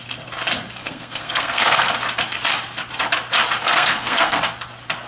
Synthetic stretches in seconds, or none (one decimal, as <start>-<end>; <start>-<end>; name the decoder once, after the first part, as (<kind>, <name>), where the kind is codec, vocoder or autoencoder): 0.8-1.9 (codec, SNAC); 3.6-4.4